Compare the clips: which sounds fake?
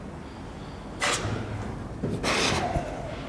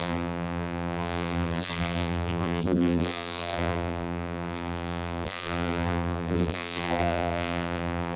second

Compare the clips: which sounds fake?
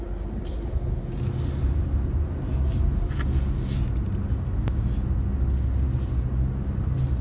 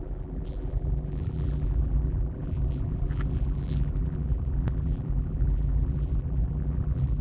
second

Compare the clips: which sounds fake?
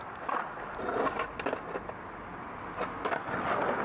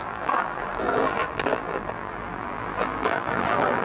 second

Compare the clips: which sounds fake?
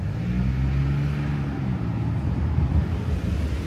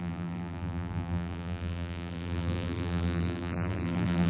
second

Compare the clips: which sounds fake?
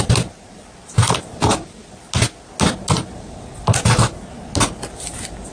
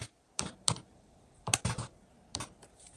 second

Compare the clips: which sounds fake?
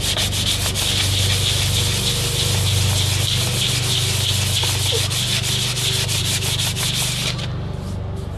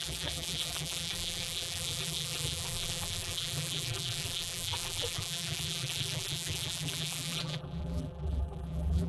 second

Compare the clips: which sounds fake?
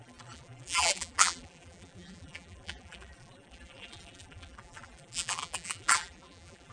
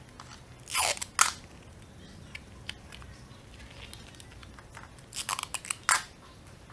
first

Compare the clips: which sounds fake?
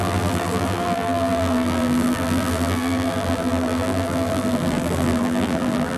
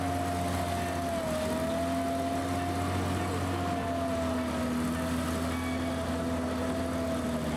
first